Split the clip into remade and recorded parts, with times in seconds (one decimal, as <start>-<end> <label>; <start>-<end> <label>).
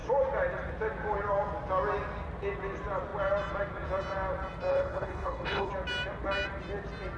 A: 0.0-4.7 recorded; 4.7-5.7 remade; 5.7-7.2 recorded